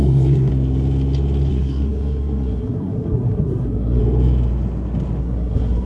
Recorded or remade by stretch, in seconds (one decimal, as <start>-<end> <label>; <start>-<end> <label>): 0.0-0.5 remade; 0.5-1.5 recorded; 1.5-4.0 remade; 4.0-5.2 recorded; 5.2-5.9 remade